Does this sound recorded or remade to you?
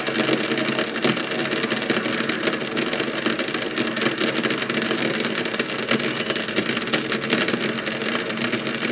recorded